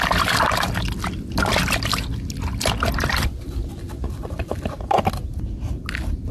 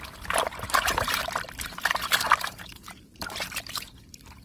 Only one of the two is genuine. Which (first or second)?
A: first